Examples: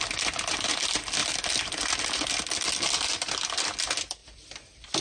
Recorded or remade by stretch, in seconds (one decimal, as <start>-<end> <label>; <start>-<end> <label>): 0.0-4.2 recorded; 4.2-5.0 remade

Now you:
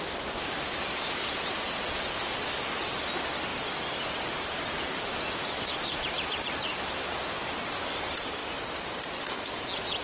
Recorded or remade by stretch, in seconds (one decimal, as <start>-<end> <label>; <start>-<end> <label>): 0.0-3.5 recorded; 3.5-8.0 remade; 8.0-10.0 recorded

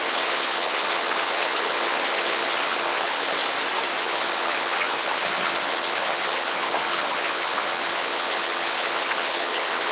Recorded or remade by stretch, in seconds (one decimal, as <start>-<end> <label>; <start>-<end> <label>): 0.0-3.4 remade; 3.4-4.0 recorded; 4.0-9.9 remade

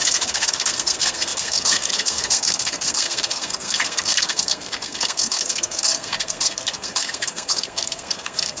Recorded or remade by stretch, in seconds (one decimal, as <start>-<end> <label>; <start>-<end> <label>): 0.0-8.6 remade